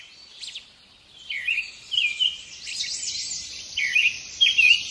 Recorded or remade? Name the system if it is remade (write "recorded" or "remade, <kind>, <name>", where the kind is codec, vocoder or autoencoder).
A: recorded